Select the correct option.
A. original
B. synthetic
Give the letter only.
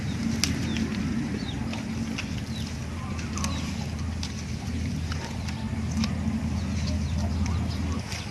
A